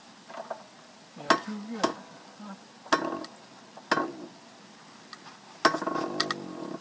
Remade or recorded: recorded